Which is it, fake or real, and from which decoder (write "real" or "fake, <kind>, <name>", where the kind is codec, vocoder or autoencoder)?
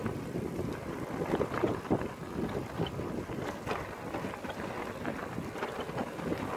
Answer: real